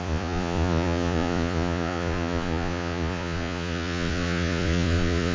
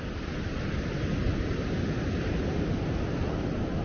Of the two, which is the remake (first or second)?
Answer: first